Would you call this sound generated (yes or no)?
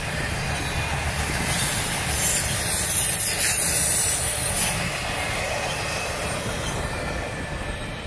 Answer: no